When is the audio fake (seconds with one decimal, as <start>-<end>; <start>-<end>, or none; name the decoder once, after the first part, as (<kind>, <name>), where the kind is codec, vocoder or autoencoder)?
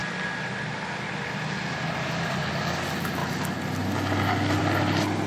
none